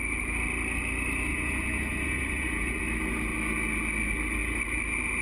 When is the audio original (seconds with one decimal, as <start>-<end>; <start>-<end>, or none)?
0.0-1.3; 2.8-5.2